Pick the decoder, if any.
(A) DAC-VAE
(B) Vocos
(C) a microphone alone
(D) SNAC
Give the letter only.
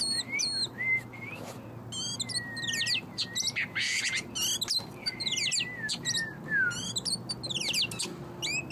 C